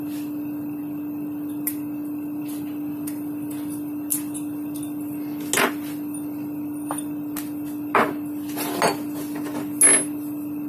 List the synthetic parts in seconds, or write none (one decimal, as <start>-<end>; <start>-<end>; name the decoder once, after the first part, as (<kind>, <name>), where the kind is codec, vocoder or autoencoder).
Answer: none